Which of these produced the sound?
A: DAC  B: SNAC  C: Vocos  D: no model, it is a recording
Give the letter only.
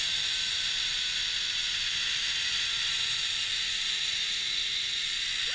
D